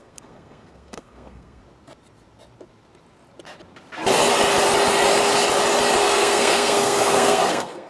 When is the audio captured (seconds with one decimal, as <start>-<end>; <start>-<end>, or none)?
1.6-6.0